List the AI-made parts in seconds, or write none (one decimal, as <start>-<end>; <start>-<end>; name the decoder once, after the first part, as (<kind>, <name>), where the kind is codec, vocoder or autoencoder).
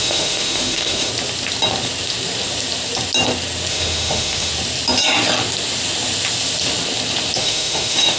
0.0-1.1 (autoencoder, DAC-VAE); 3.7-4.5; 7.4-8.2